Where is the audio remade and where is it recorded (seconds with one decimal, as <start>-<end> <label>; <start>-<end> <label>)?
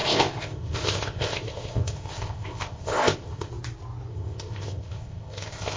0.0-3.5 remade; 3.5-4.1 recorded; 4.1-5.8 remade